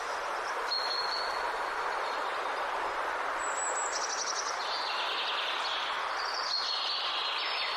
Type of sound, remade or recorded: recorded